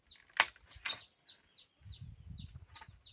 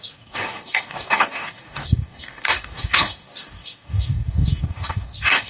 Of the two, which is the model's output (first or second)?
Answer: second